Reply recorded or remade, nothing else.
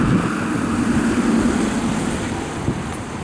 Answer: recorded